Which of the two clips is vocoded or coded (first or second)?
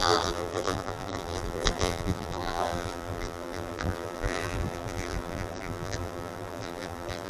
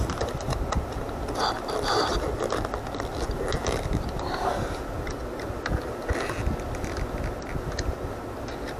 first